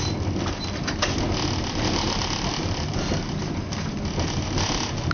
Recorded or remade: recorded